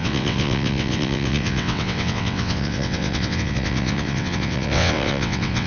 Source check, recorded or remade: remade